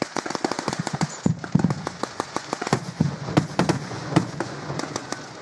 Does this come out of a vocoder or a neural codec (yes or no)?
yes